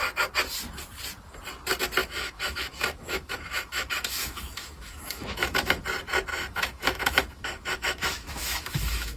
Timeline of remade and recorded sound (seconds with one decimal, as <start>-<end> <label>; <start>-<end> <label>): 0.0-2.0 recorded; 2.0-5.8 remade; 5.8-6.3 recorded; 6.3-9.2 remade

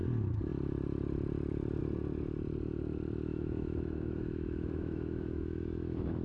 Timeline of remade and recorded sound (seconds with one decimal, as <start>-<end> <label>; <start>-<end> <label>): 0.0-3.3 recorded; 3.3-6.2 remade

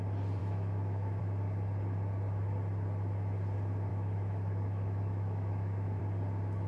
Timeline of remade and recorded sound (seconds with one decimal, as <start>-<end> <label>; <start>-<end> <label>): 0.0-0.4 recorded; 0.4-1.2 remade; 1.2-3.9 recorded; 3.9-6.0 remade; 6.0-6.7 recorded